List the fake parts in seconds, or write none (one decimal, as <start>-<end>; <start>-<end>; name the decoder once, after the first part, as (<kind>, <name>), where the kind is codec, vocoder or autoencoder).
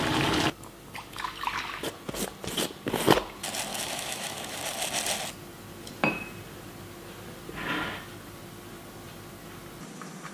3.7-4.6 (autoencoder, DAC-VAE)